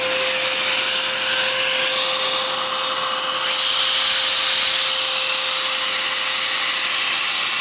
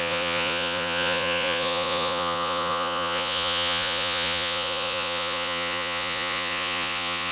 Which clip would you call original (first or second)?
first